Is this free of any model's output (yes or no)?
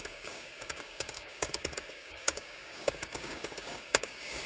no